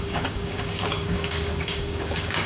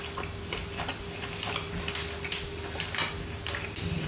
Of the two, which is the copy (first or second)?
first